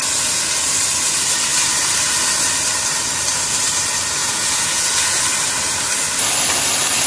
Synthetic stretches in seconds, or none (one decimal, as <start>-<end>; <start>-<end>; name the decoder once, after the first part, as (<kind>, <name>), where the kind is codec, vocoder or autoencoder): 4.2-5.2 (vocoder, Vocos)